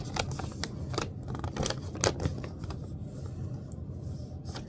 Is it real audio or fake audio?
real